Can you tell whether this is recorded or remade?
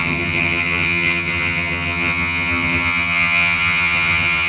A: remade